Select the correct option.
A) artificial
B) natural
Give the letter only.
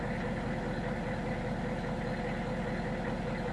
B